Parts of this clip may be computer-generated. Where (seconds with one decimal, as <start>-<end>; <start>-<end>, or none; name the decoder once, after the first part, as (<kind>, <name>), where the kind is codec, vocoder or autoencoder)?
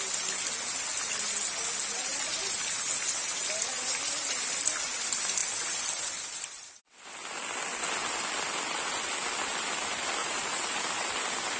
10.2-10.8 (vocoder, Vocos)